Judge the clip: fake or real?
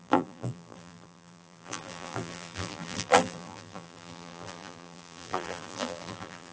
fake